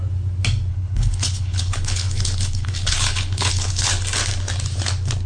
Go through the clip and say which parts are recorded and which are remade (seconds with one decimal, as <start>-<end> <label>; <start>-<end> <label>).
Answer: 0.0-0.7 recorded; 0.7-3.9 remade; 3.9-5.3 recorded